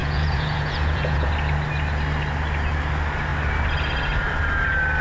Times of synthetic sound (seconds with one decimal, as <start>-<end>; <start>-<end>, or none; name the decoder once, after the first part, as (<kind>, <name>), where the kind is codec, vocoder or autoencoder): 0.0-1.3 (vocoder, Vocos)